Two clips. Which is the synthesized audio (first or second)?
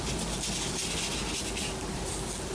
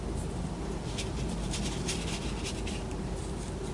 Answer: second